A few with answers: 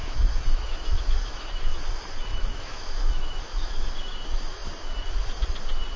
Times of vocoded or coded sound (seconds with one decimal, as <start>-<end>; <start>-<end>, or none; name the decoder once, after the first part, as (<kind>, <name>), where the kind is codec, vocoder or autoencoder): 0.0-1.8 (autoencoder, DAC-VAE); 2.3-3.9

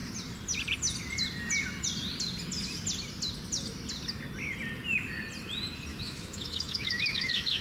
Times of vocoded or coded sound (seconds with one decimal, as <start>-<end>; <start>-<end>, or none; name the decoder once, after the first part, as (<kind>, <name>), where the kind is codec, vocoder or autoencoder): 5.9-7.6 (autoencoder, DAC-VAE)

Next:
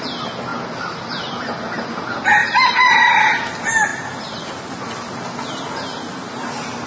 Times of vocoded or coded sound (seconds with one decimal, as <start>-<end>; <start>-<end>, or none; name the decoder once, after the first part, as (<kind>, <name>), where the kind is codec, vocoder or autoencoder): 2.4-3.1 (vocoder, BigVGAN v2)

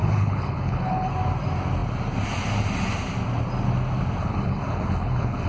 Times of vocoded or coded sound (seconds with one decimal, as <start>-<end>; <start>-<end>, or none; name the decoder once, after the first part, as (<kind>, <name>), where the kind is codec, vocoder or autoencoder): 0.0-1.1 (codec, HILCodec); 4.2-5.5

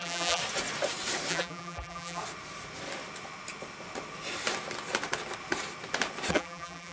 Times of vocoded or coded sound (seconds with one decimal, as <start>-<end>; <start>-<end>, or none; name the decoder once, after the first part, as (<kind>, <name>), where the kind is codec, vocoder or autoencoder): 0.0-0.4 (vocoder, BigVGAN v2); 1.3-2.2; 6.3-6.9

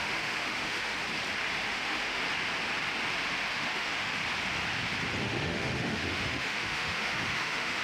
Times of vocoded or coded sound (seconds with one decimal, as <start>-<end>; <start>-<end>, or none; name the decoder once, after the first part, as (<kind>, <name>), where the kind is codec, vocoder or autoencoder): 0.0-0.9 (autoencoder, DAC-VAE); 1.7-2.2; 3.5-4.2; 5.2-7.8